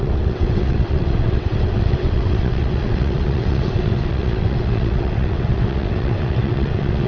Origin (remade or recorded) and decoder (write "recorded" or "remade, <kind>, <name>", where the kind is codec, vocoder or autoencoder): remade, vocoder, WaveNeXt